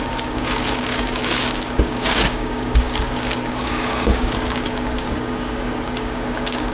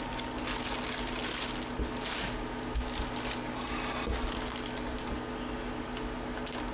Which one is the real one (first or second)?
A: second